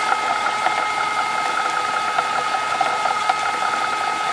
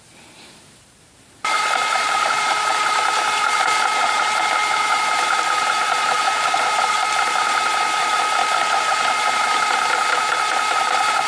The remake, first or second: second